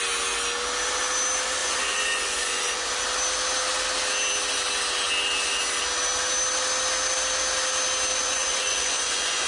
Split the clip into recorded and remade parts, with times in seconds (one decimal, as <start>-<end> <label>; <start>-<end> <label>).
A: 0.0-1.6 recorded; 1.6-2.9 remade; 2.9-8.1 recorded; 8.1-9.5 remade